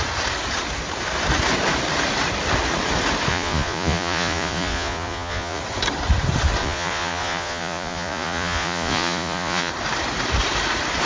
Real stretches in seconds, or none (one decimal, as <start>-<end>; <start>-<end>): 0.0-3.3; 5.6-6.6; 9.7-11.1